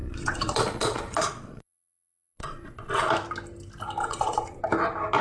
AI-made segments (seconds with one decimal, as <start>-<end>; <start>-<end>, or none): 0.0-3.1; 4.0-4.6